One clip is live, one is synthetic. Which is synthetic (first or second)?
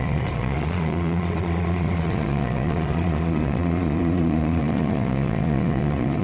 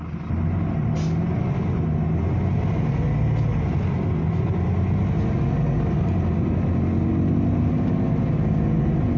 first